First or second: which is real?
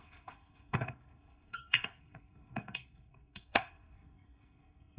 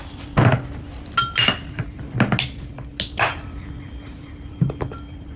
second